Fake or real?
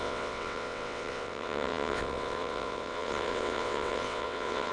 fake